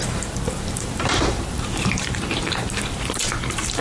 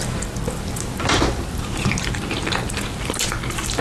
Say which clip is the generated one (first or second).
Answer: first